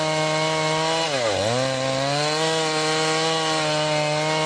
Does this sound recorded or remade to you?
recorded